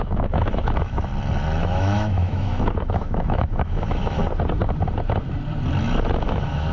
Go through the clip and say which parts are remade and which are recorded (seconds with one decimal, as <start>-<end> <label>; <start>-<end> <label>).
0.0-1.1 remade; 1.1-1.6 recorded; 1.6-4.2 remade; 4.2-6.1 recorded; 6.1-6.7 remade